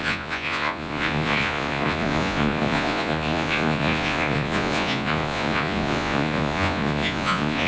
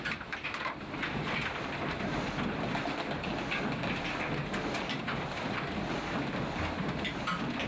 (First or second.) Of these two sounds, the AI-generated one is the first